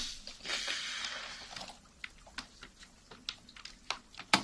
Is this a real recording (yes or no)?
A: yes